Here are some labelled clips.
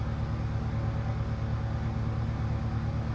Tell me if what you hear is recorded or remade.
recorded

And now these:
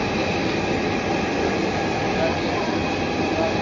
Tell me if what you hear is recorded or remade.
recorded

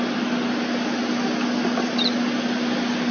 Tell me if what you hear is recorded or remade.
recorded